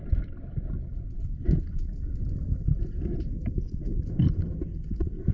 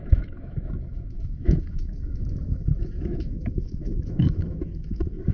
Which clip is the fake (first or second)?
second